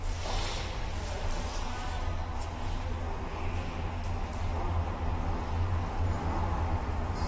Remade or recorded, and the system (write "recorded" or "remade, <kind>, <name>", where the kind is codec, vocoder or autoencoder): recorded